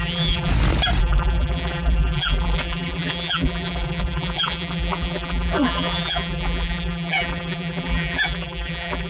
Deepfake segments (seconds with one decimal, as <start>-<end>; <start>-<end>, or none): 0.0-0.5; 1.0-9.1